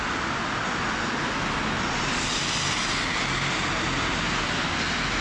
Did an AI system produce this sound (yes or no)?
no